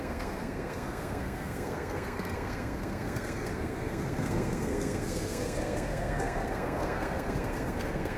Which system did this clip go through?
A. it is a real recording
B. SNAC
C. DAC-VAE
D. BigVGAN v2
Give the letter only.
B